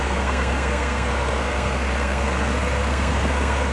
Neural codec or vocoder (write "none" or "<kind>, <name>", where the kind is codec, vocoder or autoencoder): codec, SNAC